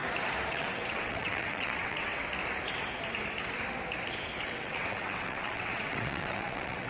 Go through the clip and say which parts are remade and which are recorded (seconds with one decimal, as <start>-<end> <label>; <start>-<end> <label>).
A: 0.0-0.5 recorded; 0.5-2.2 remade; 2.2-4.4 recorded; 4.4-6.9 remade